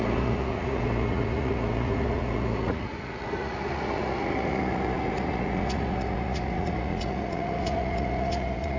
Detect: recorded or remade remade